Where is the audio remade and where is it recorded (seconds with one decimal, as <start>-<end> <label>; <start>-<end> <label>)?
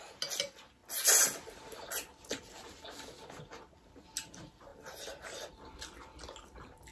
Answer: 0.0-6.9 recorded